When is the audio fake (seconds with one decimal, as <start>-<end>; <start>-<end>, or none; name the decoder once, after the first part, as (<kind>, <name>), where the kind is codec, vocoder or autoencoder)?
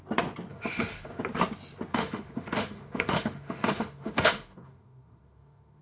0.5-1.2 (autoencoder, DAC-VAE); 1.9-5.8